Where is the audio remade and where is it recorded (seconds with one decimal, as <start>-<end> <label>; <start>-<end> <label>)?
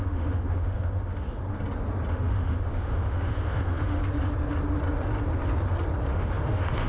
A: 0.0-1.4 remade; 1.4-2.1 recorded; 2.1-4.0 remade; 4.0-6.1 recorded; 6.1-6.9 remade